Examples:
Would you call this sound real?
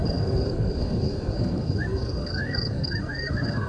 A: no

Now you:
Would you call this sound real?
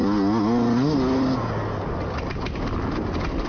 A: yes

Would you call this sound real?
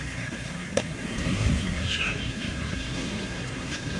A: no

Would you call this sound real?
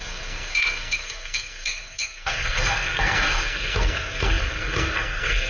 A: no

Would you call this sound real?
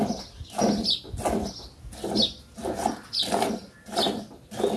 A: yes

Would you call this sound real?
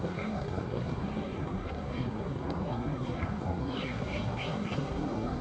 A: no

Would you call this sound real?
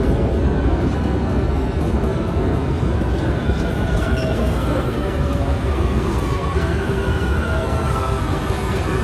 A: no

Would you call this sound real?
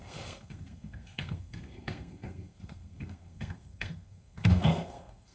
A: no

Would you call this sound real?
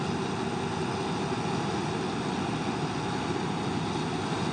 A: yes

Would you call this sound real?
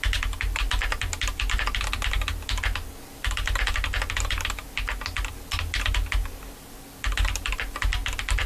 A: yes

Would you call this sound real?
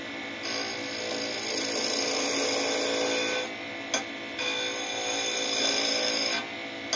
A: yes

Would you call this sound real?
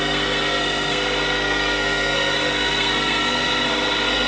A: no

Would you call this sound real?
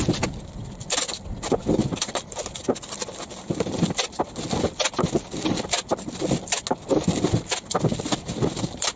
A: yes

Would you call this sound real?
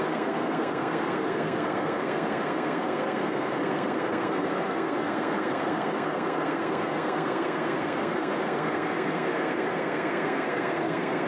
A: no